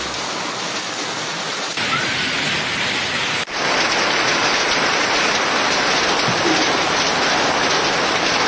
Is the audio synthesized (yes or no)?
no